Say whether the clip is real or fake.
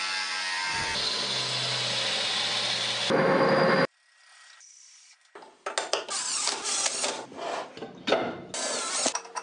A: real